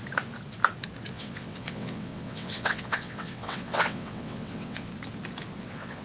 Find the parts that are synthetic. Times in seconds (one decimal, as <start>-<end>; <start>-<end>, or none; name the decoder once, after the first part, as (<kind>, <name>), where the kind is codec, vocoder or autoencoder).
1.1-4.9 (vocoder, WaveNeXt); 5.6-6.0

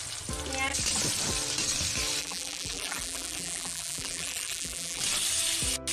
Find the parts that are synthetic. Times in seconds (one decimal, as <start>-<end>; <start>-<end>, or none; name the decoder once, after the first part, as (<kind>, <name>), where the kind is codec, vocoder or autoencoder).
2.2-5.0 (vocoder, BigVGAN v2)

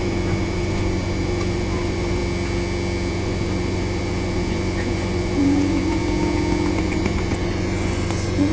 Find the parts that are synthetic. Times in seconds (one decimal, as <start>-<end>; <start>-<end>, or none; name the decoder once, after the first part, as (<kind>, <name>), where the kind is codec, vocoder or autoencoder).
0.0-2.2 (vocoder, Vocos); 3.1-6.0; 6.7-8.5

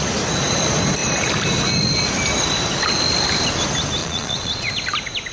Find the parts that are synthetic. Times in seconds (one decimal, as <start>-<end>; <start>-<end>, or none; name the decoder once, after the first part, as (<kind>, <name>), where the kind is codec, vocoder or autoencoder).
4.0-4.7 (vocoder, Vocos)

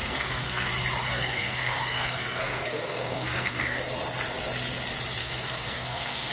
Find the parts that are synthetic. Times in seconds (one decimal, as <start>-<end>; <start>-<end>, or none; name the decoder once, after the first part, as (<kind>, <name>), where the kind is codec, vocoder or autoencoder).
0.0-0.7 (codec, SNAC); 1.1-3.8; 5.2-6.3

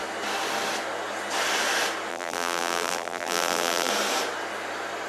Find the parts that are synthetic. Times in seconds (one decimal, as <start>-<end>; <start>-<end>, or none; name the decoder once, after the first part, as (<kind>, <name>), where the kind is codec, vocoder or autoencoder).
2.1-3.9 (vocoder, BigVGAN v2)

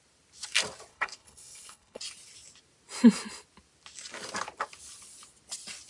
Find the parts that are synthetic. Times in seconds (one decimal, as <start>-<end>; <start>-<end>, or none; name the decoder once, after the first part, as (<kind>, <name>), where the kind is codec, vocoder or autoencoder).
0.9-2.0 (codec, HILCodec)